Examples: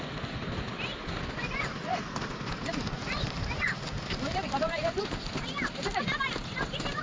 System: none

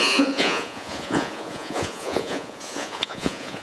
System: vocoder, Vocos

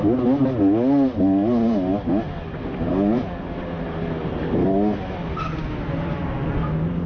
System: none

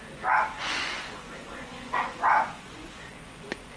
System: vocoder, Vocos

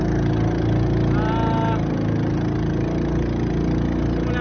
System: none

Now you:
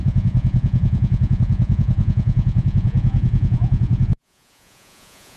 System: vocoder, Vocos